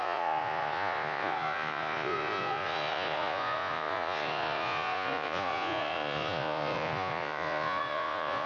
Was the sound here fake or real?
fake